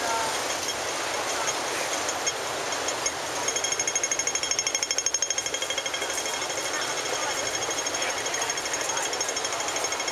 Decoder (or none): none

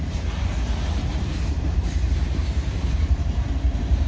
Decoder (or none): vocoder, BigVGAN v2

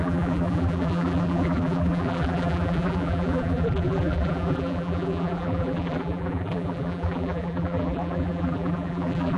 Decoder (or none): vocoder, BigVGAN v2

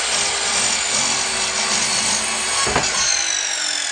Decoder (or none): none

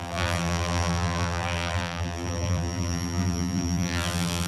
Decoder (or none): vocoder, BigVGAN v2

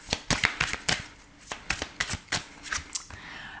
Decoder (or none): none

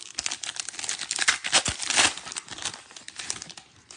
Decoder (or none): none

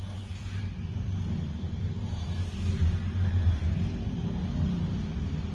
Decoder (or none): vocoder, BigVGAN v2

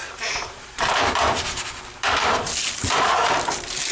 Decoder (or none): vocoder, BigVGAN v2